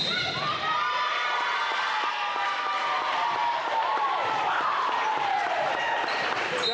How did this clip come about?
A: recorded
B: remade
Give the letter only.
A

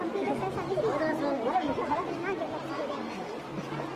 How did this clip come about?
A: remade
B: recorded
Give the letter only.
B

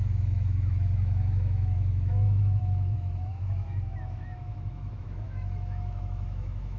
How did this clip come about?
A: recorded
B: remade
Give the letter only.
B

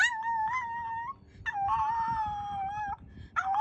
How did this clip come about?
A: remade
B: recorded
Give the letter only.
B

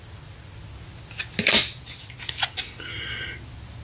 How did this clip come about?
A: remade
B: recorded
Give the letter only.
B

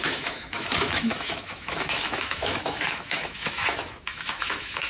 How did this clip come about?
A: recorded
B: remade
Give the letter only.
B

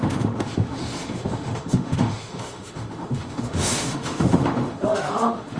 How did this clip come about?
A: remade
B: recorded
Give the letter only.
A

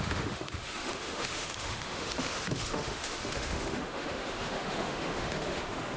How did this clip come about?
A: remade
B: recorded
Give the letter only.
A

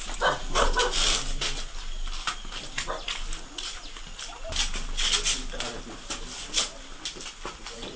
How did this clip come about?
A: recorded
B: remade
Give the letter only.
A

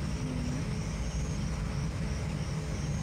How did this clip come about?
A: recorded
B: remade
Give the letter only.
A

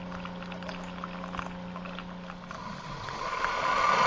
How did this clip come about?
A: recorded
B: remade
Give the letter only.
A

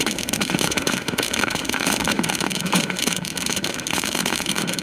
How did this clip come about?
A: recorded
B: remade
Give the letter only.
B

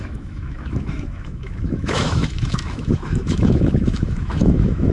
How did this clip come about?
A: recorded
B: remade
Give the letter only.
B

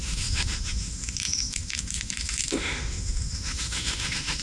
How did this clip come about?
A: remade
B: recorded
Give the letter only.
A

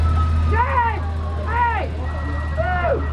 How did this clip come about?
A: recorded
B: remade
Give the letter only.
A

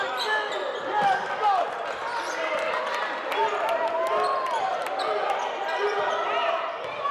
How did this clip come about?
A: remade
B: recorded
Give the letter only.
B